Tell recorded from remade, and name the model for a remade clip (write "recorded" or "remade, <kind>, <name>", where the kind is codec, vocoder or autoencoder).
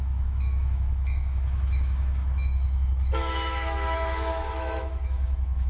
remade, autoencoder, DAC-VAE